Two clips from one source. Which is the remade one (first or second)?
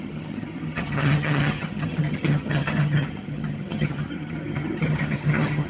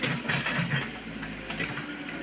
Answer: first